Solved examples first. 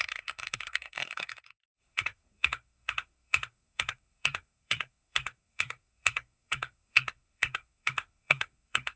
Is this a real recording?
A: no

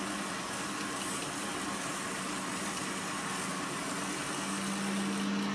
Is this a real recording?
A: yes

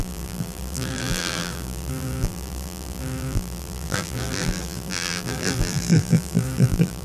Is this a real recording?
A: no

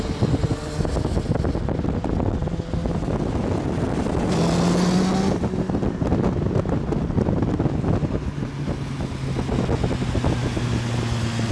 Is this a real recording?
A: yes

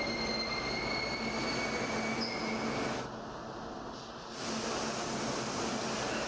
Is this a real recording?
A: yes